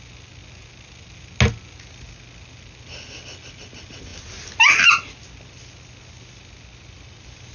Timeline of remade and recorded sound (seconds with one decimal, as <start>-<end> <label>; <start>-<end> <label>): 0.0-7.5 recorded